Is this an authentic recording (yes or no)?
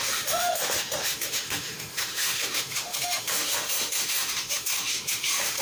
no